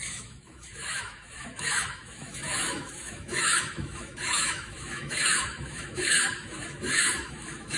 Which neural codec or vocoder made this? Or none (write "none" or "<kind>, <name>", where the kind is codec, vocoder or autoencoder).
autoencoder, DAC-VAE